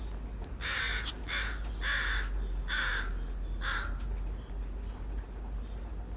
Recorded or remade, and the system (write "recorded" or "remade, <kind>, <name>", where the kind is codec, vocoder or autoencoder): recorded